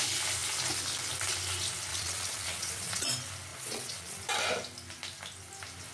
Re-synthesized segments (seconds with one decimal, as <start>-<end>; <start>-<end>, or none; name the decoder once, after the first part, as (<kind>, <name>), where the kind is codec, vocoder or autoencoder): 1.9-3.1 (vocoder, Vocos); 3.5-4.2

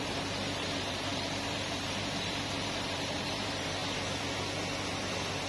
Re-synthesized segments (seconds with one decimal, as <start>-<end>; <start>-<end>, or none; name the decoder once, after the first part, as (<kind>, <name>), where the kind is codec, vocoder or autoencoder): 0.0-3.8 (vocoder, BigVGAN v2)

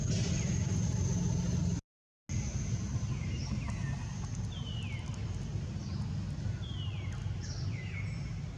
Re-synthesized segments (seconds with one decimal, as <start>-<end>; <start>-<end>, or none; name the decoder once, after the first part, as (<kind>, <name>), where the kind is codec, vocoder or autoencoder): none

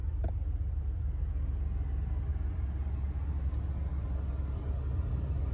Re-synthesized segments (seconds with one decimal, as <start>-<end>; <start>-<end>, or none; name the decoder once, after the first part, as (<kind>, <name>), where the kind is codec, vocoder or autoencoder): 0.0-0.8 (vocoder, BigVGAN v2)

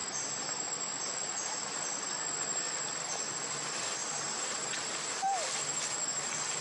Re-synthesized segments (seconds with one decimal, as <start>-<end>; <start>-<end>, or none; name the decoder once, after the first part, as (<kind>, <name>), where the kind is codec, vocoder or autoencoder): 0.0-1.1 (vocoder, BigVGAN v2); 4.0-5.2